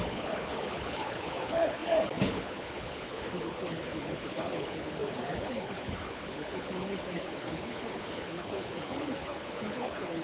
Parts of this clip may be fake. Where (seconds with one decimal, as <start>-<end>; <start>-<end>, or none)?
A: 0.0-10.2